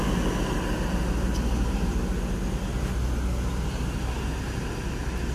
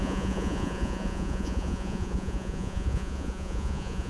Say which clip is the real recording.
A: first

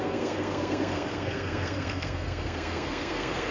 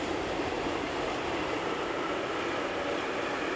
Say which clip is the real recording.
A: second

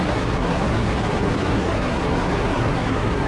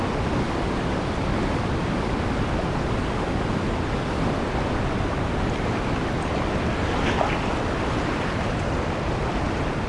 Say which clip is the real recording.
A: second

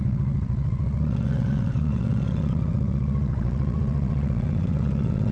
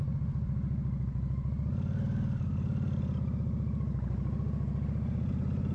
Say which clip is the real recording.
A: second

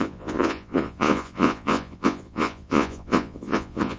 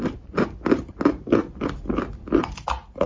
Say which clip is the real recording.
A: second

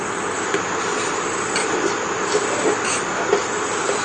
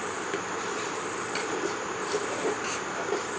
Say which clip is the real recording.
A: first